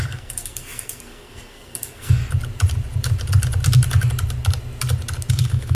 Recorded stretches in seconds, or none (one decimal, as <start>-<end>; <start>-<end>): 2.2-5.3